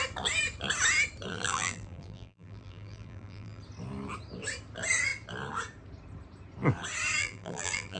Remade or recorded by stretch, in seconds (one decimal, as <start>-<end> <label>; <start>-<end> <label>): 0.0-1.3 recorded; 1.3-3.6 remade; 3.6-7.2 recorded; 7.2-8.0 remade